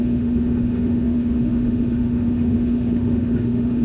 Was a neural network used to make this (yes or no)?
yes